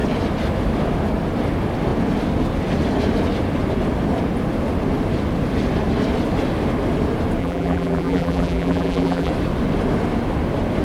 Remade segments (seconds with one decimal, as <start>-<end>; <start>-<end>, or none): 7.4-9.3